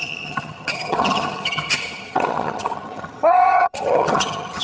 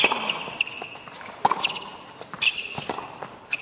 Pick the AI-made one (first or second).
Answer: first